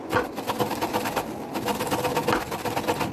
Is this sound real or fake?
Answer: real